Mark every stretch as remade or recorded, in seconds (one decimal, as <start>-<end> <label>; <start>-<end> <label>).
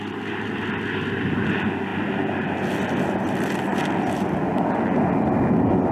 0.0-5.9 recorded